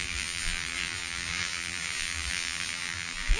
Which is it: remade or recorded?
remade